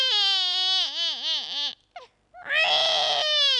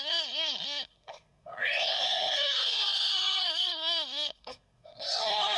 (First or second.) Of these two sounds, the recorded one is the first